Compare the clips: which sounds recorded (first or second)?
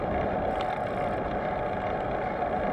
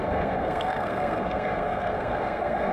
first